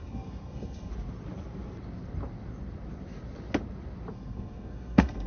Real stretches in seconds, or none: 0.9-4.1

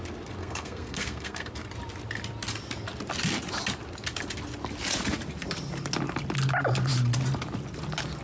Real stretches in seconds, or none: 0.0-0.4; 1.5-8.2

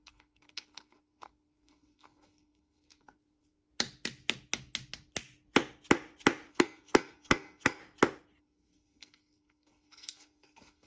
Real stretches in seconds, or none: 3.7-6.5; 7.8-8.4